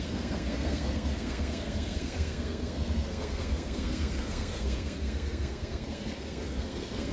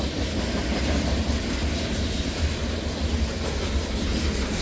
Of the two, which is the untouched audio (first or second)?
second